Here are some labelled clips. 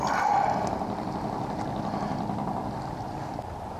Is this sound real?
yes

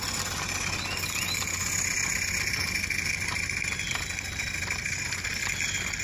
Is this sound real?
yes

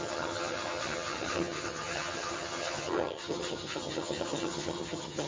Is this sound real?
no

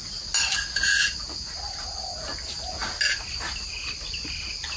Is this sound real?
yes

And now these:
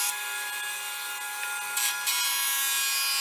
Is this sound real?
yes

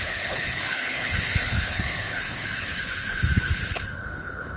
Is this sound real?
no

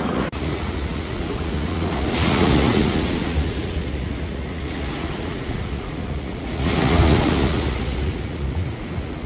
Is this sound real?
no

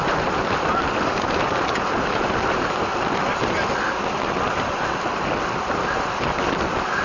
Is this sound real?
yes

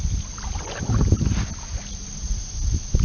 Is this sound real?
yes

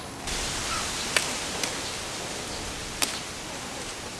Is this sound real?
yes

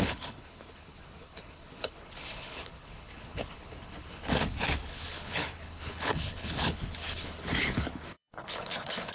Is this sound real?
no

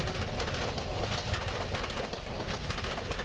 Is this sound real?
yes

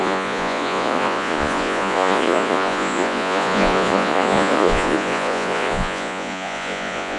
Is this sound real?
no